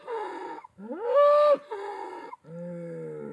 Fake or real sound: real